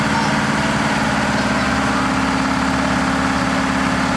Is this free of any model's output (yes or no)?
yes